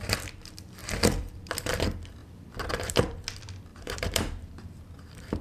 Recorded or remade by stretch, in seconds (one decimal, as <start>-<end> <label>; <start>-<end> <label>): 0.0-2.2 remade; 2.2-2.8 recorded; 2.8-5.4 remade